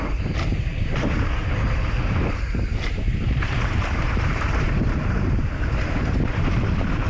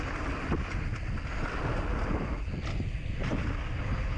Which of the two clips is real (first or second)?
second